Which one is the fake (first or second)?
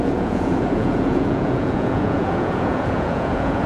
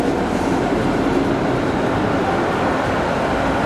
first